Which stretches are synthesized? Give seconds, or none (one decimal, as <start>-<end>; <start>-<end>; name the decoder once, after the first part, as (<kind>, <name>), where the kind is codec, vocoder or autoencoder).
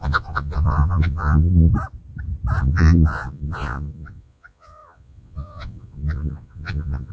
0.0-1.7 (vocoder, Vocos); 2.6-7.1